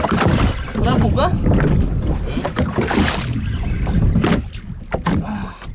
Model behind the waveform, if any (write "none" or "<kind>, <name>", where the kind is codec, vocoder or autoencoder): none